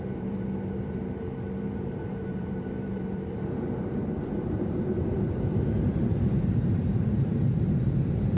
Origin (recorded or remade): remade